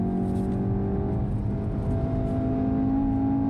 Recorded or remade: recorded